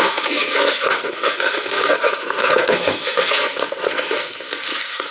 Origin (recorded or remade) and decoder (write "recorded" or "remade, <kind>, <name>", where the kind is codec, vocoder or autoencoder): remade, codec, SNAC